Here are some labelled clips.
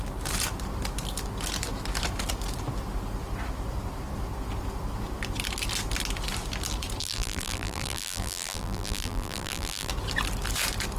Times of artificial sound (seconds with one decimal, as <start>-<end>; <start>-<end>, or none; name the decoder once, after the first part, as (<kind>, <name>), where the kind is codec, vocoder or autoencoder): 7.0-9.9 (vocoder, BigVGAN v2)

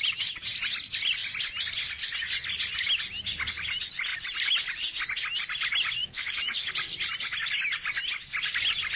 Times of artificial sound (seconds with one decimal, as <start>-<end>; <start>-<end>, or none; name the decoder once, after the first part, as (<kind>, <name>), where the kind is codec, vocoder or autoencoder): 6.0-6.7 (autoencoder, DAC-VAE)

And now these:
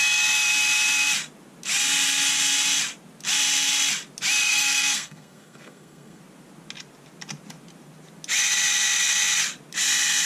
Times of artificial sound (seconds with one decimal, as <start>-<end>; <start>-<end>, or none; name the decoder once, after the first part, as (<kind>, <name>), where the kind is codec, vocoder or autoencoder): 4.4-6.2 (codec, SNAC)